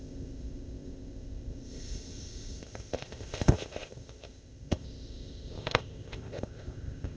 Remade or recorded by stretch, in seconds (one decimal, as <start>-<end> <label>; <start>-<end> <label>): 0.0-7.2 remade